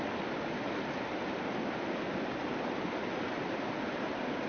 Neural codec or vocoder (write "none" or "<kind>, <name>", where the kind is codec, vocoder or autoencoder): none